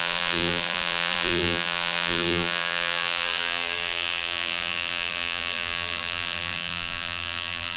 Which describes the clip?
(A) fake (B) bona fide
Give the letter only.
A